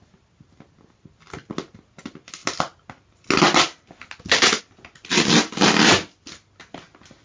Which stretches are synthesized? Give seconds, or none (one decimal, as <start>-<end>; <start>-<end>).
none